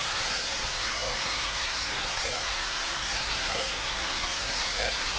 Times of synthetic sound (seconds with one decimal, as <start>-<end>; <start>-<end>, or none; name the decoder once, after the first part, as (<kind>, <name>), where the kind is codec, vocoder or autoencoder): 0.0-5.2 (codec, SNAC)